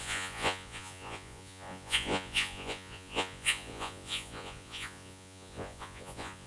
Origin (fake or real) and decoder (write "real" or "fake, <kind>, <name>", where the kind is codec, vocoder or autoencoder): fake, vocoder, Vocos